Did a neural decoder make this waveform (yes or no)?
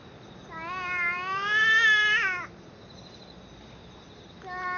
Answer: no